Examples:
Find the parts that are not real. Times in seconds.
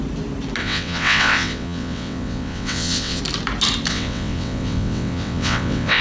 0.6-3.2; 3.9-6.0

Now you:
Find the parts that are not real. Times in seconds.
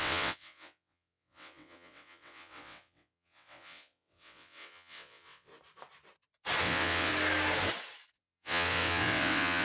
0.0-5.5; 6.6-7.1; 8.2-9.6